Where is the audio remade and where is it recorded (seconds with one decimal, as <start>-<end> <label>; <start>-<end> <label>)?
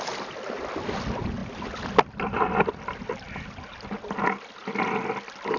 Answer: 0.0-5.6 recorded